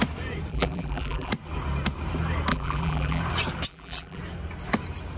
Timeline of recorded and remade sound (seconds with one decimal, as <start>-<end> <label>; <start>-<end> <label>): 0.0-0.5 recorded; 0.5-1.3 remade; 1.3-2.5 recorded; 2.5-3.2 remade; 3.2-3.7 recorded; 3.7-4.2 remade; 4.2-5.2 recorded